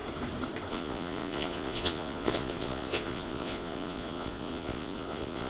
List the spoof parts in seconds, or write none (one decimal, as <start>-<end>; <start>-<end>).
0.7-5.5